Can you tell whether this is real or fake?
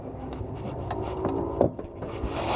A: real